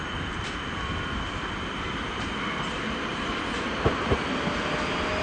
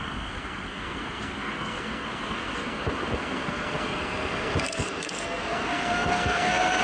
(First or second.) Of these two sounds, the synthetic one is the second